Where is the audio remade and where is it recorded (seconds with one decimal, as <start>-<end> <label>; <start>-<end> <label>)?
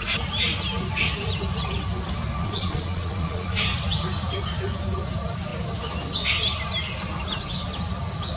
0.0-2.4 recorded; 2.4-3.6 remade; 3.6-8.4 recorded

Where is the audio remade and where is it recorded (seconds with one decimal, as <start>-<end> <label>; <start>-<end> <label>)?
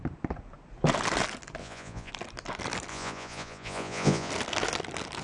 0.0-1.6 recorded; 1.6-2.1 remade; 2.1-2.9 recorded; 2.9-4.3 remade; 4.3-5.2 recorded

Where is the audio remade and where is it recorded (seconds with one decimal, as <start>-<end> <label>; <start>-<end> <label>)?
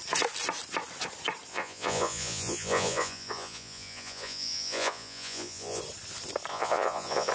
0.0-1.5 recorded; 1.5-5.8 remade; 5.8-6.5 recorded; 6.5-7.3 remade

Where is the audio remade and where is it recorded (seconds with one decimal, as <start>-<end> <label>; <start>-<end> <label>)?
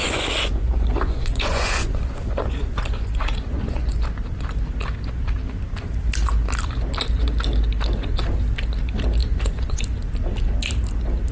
0.0-4.0 remade; 4.0-9.2 recorded; 9.2-9.8 remade; 9.8-11.3 recorded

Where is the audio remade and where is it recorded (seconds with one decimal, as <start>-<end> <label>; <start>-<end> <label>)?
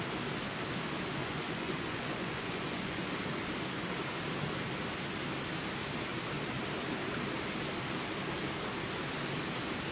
0.0-1.2 recorded; 1.2-3.1 remade; 3.1-9.9 recorded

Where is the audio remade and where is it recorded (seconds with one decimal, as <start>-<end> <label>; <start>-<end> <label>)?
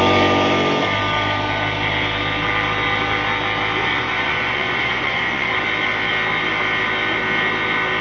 0.0-3.8 recorded; 3.8-5.5 remade; 5.5-8.0 recorded